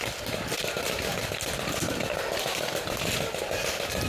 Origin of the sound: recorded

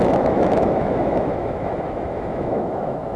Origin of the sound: remade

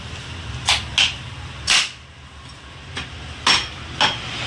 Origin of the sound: recorded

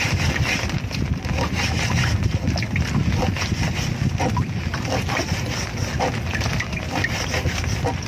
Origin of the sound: recorded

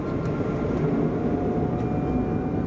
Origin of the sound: recorded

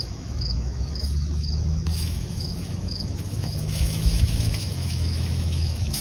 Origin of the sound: remade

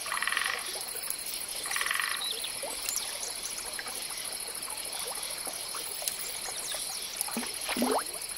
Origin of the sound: recorded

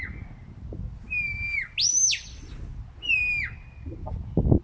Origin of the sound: recorded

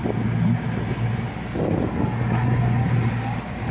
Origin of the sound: recorded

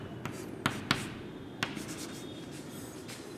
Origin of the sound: recorded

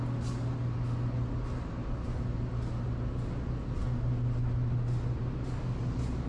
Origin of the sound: recorded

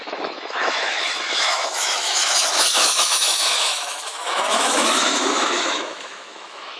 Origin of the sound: remade